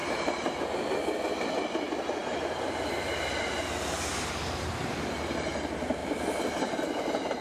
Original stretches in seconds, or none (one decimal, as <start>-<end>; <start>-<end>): 0.6-2.2; 3.6-6.0